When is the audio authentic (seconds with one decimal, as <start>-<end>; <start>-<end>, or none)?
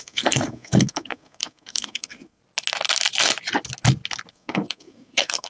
2.4-4.3